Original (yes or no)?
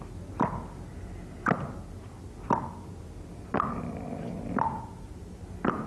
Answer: yes